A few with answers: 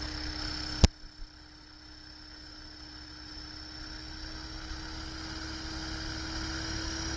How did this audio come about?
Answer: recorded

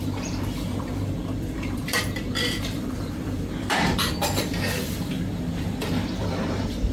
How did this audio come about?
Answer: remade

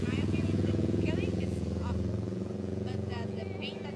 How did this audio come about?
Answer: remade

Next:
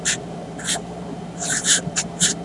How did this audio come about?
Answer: remade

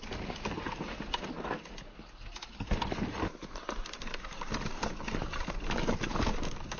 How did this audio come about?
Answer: recorded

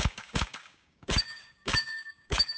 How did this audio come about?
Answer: remade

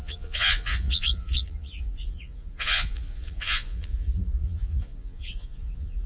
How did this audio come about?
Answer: remade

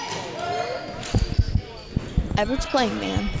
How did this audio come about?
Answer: recorded